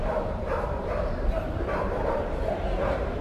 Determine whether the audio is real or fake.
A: fake